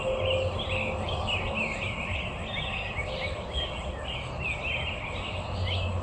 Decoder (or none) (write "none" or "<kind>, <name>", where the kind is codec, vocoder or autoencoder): none